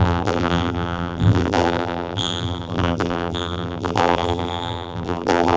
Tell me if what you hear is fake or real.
fake